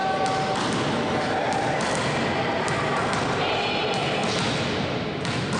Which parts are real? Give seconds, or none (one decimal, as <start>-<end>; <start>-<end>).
0.0-5.6